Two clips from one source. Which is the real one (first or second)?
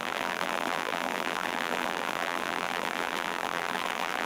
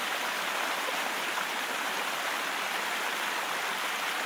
second